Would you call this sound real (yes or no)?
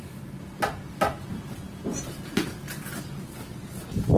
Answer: yes